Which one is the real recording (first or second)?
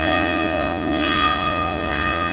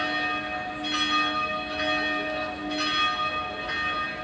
second